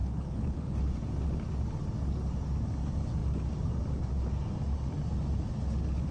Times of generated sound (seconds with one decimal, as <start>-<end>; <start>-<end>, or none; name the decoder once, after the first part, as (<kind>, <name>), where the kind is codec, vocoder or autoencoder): 0.0-0.7 (codec, HILCodec)